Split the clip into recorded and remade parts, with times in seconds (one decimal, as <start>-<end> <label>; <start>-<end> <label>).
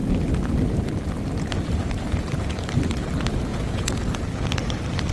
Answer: 0.0-3.5 recorded; 3.5-4.2 remade; 4.2-5.1 recorded